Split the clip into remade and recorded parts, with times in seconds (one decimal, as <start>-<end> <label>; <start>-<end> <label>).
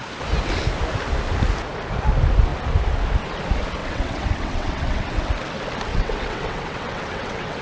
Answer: 0.0-3.8 recorded; 3.8-5.2 remade; 5.2-5.9 recorded; 5.9-7.6 remade